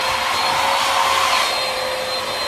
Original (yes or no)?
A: yes